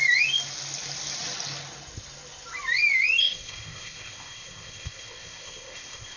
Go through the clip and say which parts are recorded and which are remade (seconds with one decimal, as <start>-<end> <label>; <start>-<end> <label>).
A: 0.0-3.2 recorded; 3.2-6.2 remade